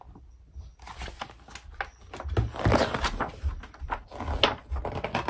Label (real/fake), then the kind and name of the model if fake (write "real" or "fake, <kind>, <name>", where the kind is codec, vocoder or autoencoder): real